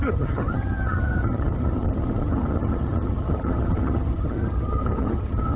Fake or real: fake